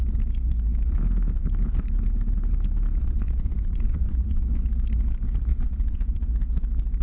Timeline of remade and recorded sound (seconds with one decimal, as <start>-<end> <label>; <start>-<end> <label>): 0.0-3.0 recorded; 3.0-4.4 remade; 4.4-5.5 recorded; 5.5-6.3 remade; 6.3-7.0 recorded